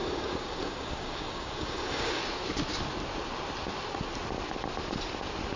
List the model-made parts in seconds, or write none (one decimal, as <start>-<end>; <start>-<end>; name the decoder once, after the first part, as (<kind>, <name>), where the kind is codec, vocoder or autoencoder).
0.0-2.2 (codec, DAC)